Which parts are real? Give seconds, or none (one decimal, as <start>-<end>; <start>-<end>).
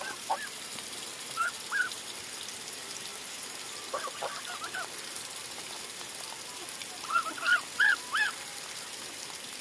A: 0.0-7.5; 8.1-9.6